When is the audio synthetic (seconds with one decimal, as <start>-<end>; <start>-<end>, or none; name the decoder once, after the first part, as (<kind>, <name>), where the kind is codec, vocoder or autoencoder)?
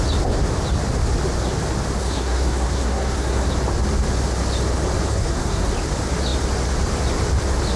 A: 2.0-3.5 (codec, SNAC); 5.1-5.7